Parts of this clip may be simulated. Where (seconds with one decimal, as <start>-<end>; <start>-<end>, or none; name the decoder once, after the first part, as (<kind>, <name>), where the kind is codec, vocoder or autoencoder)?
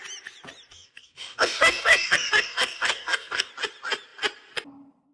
0.7-3.5 (codec, DAC)